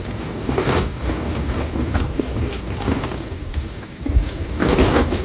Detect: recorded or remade remade